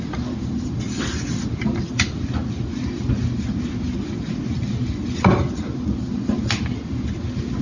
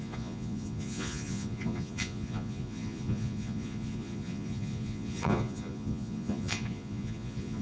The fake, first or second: second